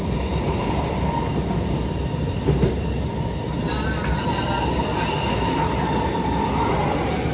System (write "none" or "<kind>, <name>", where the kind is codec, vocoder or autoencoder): none